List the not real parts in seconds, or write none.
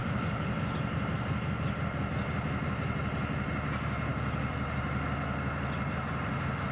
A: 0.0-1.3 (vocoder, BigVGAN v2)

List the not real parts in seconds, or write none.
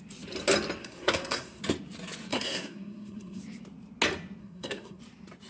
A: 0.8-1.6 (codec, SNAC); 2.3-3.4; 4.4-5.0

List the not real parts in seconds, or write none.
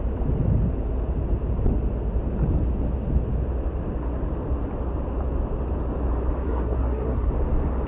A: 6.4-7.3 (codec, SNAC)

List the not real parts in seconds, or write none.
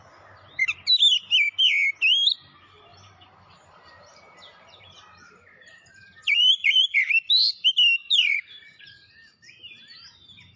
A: 2.9-6.8 (vocoder, BigVGAN v2); 8.0-8.8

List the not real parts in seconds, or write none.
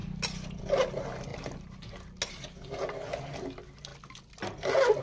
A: none